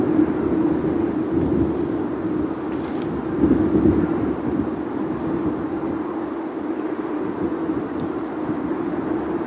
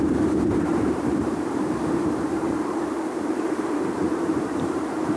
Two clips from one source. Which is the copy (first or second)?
second